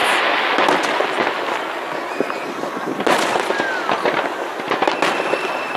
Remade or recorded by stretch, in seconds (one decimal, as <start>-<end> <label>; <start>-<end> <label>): 0.0-5.8 recorded